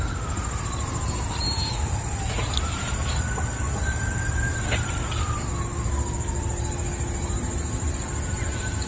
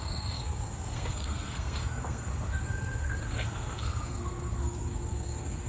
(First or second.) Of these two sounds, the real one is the first